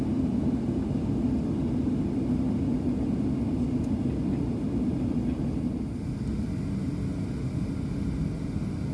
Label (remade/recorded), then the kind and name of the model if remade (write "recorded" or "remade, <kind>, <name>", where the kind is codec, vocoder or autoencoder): recorded